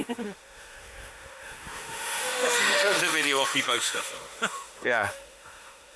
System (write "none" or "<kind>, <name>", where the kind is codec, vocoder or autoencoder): autoencoder, DAC-VAE